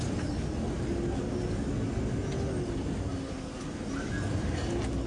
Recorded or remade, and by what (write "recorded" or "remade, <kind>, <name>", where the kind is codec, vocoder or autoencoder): recorded